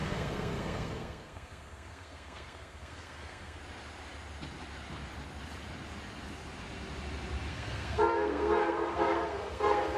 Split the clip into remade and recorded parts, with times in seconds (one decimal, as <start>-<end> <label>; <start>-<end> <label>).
0.0-3.6 remade; 3.6-7.5 recorded; 7.5-10.0 remade